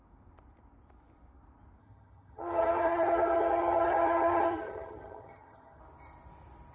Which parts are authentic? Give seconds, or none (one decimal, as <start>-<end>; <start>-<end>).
0.0-1.8; 5.8-6.7